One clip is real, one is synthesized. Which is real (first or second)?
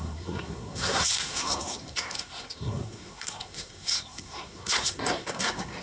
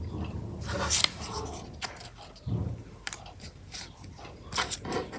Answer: second